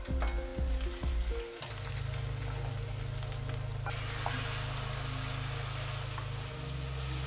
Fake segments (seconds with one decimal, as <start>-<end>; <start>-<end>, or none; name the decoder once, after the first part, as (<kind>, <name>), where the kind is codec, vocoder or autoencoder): none